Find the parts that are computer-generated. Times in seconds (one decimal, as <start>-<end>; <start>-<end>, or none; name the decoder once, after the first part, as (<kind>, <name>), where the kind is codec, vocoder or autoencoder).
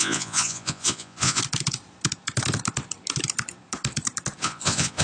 0.0-1.4 (vocoder, Vocos); 4.4-5.0